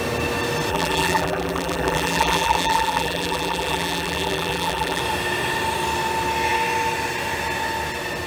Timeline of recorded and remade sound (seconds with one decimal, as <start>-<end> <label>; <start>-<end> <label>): 0.0-0.7 recorded; 0.7-5.0 remade; 5.0-8.3 recorded